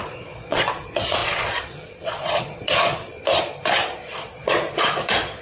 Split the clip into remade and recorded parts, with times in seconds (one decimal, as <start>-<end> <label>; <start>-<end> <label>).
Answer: 0.0-3.1 remade; 3.1-3.9 recorded; 3.9-5.4 remade